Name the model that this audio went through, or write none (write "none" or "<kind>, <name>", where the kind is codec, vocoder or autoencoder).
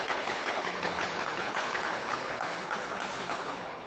codec, HILCodec